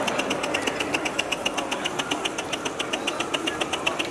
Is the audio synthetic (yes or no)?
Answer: no